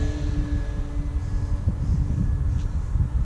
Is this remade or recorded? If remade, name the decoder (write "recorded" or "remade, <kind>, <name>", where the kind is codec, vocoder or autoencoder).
recorded